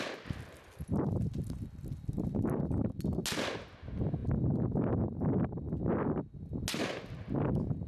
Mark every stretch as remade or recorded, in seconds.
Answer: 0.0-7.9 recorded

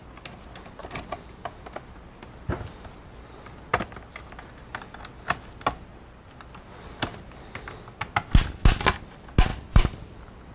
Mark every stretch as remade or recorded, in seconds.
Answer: 0.0-9.5 recorded; 9.5-10.5 remade

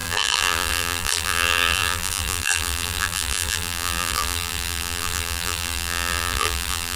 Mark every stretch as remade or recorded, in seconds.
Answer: 0.0-7.0 remade

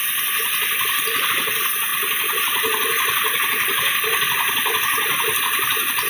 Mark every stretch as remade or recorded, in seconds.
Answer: 0.0-6.1 recorded